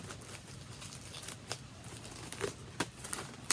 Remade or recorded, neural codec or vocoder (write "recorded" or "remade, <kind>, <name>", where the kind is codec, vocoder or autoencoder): remade, vocoder, BigVGAN v2